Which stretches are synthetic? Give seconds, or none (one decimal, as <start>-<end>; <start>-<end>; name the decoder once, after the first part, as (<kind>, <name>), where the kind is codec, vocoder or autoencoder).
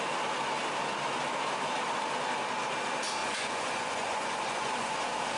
3.2-5.0 (vocoder, Vocos)